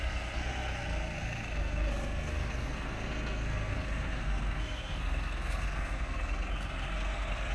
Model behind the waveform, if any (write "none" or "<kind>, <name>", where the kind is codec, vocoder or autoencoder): codec, SNAC